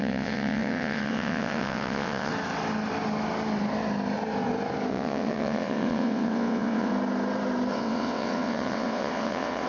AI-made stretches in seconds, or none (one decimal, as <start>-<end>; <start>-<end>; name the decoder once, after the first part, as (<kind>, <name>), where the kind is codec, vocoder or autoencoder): 0.0-2.3 (vocoder, WaveNeXt); 4.9-6.9; 7.7-9.7